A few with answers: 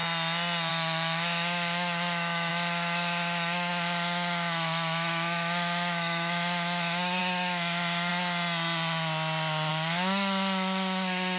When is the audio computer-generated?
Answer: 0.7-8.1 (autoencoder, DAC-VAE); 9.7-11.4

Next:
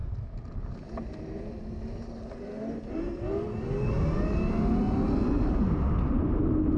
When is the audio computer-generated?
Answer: none

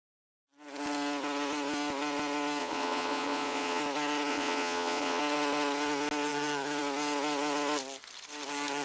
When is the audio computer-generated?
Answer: 2.6-3.8 (vocoder, Vocos); 4.3-5.2